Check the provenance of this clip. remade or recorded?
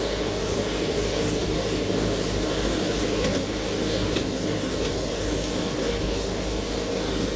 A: remade